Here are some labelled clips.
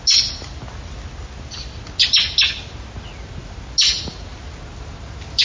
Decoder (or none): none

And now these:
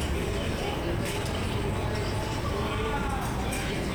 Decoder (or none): none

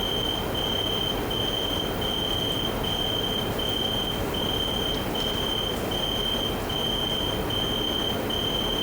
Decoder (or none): none